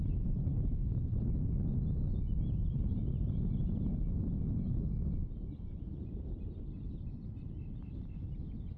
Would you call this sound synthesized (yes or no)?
no